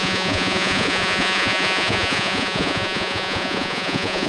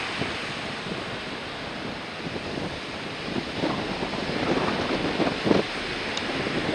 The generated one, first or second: first